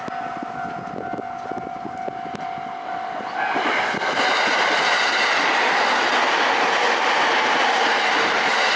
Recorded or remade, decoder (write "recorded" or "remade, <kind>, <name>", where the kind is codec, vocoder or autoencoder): recorded